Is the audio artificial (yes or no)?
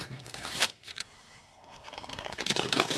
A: yes